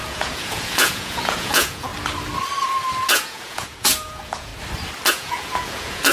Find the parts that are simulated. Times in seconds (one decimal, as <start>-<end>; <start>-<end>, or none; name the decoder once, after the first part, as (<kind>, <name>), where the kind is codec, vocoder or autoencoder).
0.0-1.9 (vocoder, Vocos); 3.1-4.5; 5.1-6.1